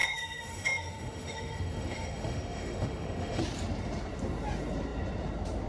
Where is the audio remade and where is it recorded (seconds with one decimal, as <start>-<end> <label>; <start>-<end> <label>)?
0.0-3.4 remade; 3.4-5.7 recorded